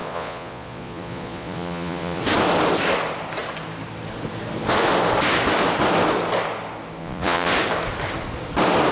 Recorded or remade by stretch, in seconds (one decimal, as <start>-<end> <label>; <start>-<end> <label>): 0.0-2.2 remade; 2.2-7.0 recorded; 7.0-7.5 remade; 7.5-8.9 recorded